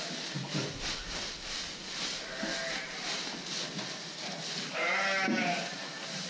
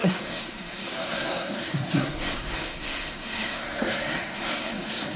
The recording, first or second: first